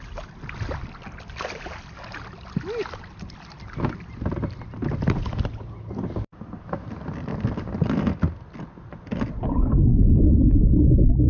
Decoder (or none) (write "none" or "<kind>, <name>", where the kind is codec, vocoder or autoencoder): none